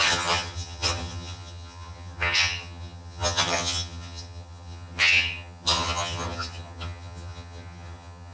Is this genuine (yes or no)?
no